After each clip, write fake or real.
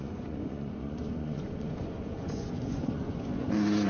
fake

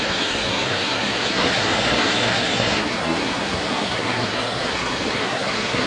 fake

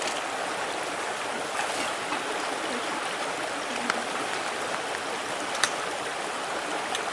real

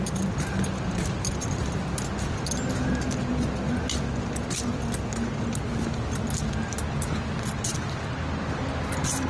real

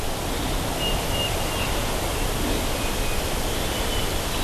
real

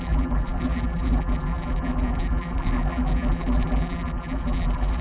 fake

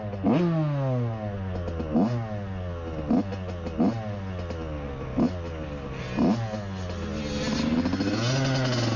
real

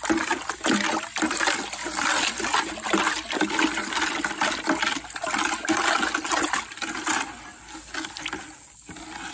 real